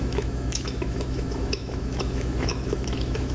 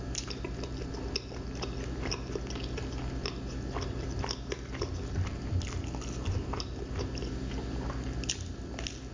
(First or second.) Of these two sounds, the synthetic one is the first